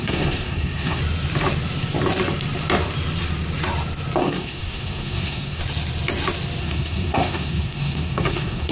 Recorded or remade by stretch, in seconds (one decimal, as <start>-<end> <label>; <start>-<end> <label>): 0.0-1.0 remade; 1.0-4.2 recorded; 4.2-5.6 remade; 5.6-6.6 recorded; 6.6-8.7 remade